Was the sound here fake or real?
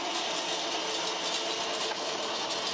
real